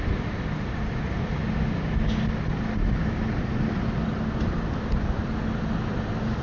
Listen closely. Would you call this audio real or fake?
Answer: real